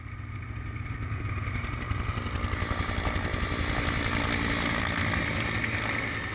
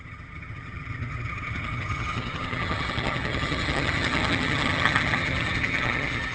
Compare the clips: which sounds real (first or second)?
first